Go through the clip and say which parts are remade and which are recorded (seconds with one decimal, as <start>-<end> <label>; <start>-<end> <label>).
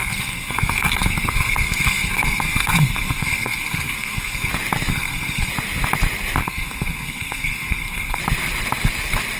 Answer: 0.0-4.5 remade; 4.5-4.9 recorded; 4.9-5.5 remade; 5.5-6.4 recorded; 6.4-8.2 remade; 8.2-9.4 recorded